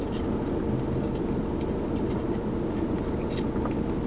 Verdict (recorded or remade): recorded